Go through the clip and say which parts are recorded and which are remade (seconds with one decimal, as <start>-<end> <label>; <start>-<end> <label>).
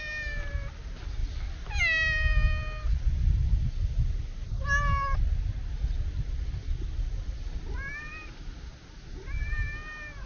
0.0-10.3 recorded